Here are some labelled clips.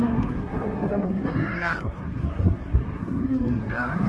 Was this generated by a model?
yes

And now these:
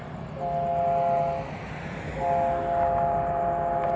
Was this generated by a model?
no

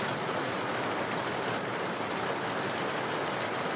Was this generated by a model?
no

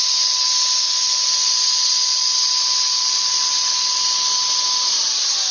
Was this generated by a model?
no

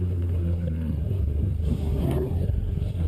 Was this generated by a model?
yes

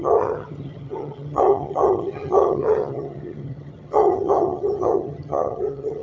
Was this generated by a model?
yes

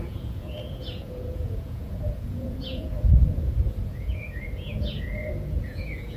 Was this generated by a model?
yes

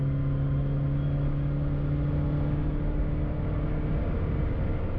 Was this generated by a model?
no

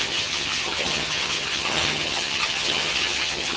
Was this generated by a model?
yes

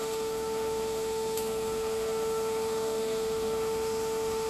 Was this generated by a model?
yes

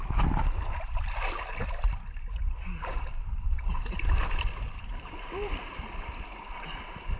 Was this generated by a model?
no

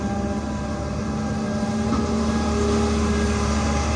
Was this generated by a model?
no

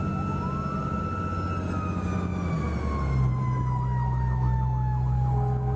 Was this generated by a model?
no